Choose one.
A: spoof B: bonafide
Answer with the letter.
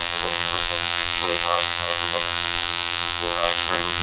A